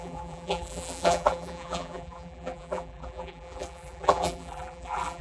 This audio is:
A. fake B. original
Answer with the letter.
A